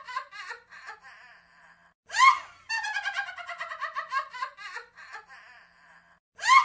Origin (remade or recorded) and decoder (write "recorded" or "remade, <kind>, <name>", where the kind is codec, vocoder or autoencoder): recorded